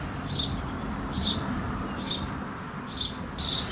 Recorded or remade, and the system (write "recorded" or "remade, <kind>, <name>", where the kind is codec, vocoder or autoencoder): recorded